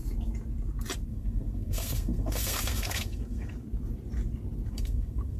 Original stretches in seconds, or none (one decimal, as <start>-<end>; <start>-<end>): 0.0-1.1; 3.6-4.7